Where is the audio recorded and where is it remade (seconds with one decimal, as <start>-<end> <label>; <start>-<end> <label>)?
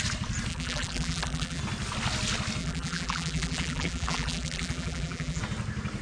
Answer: 0.0-0.5 recorded; 0.5-1.6 remade; 1.6-2.6 recorded; 2.6-5.4 remade; 5.4-6.0 recorded